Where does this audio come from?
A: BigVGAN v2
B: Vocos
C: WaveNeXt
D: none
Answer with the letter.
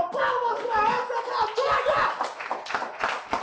D